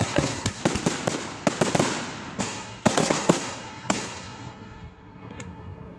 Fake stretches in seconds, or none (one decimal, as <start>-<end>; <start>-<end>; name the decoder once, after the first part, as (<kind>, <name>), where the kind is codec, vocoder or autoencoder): 0.0-0.6 (codec, SNAC); 2.4-6.0